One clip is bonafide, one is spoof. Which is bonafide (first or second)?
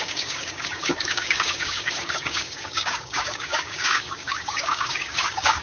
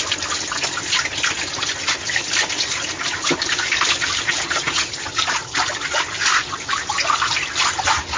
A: second